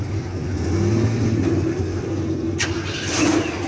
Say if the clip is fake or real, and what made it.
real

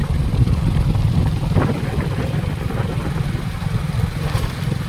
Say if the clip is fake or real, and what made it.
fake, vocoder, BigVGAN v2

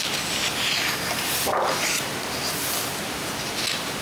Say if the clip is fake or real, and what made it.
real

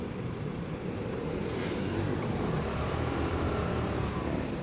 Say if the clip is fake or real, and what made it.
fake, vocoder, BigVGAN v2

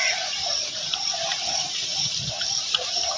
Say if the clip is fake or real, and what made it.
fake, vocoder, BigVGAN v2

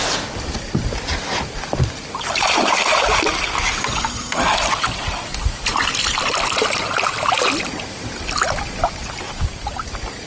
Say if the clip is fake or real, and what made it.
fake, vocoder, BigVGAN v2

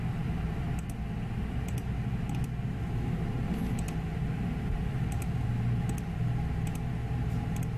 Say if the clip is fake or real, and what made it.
real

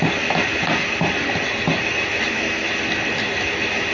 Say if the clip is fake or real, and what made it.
real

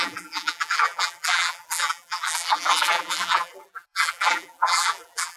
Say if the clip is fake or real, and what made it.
fake, vocoder, BigVGAN v2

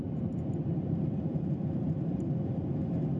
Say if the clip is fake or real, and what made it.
fake, vocoder, BigVGAN v2